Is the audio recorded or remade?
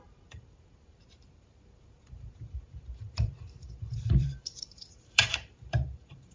remade